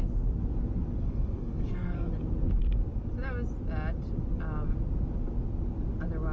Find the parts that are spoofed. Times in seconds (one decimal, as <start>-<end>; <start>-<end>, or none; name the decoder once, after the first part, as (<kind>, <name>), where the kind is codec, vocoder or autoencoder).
1.0-2.1 (codec, SNAC)